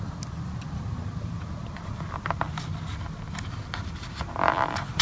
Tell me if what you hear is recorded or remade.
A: recorded